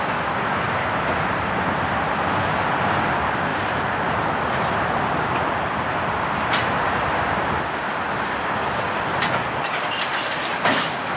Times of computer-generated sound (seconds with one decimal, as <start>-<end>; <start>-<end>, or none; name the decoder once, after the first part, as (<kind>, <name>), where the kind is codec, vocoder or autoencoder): 3.5-4.2 (vocoder, BigVGAN v2)